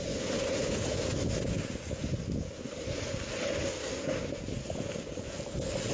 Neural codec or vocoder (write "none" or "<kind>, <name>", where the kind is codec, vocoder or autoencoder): none